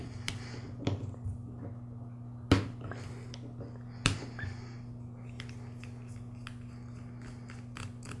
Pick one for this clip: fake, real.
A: real